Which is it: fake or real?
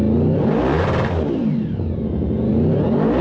real